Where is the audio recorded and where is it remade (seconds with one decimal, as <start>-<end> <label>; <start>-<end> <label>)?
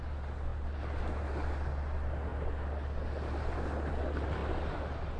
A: 0.0-5.2 recorded